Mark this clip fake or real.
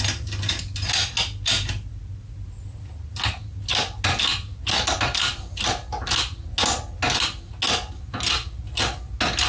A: real